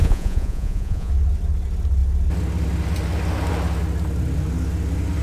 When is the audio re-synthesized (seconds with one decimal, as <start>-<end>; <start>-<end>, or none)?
0.0-1.1